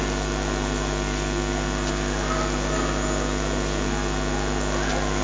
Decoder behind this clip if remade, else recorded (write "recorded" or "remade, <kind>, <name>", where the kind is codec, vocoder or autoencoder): recorded